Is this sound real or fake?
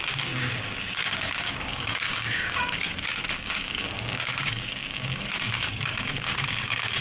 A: fake